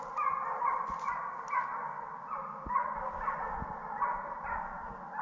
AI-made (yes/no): no